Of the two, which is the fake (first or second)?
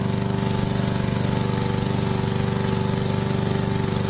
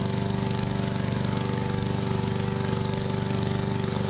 second